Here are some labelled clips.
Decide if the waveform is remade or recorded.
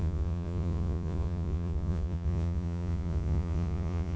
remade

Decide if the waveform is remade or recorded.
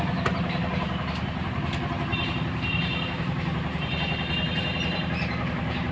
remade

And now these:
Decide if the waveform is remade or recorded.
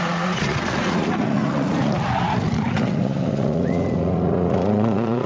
remade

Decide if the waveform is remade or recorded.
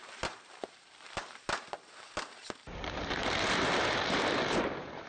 remade